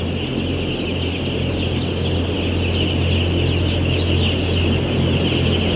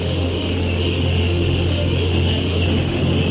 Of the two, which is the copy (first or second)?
second